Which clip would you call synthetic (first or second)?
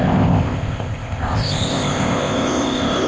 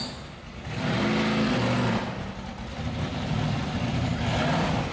first